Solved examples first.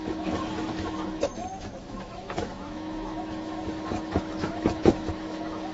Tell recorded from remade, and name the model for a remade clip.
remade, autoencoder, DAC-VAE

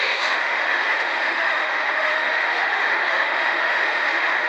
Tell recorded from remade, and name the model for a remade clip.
remade, autoencoder, DAC-VAE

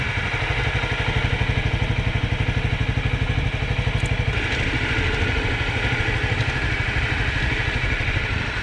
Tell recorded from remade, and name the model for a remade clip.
recorded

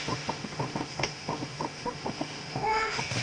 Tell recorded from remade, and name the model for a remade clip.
remade, autoencoder, DAC-VAE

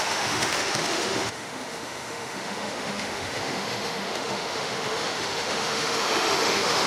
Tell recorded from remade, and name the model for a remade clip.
remade, autoencoder, DAC-VAE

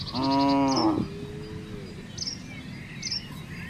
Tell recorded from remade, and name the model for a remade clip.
recorded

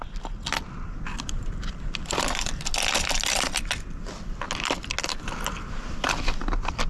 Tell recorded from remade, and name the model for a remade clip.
recorded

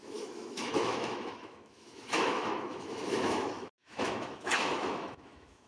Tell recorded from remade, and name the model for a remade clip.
remade, autoencoder, DAC-VAE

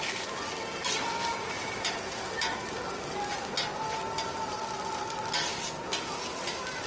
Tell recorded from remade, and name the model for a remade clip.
recorded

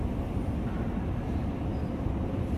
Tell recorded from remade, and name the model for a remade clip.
recorded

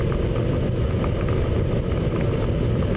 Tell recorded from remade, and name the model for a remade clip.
recorded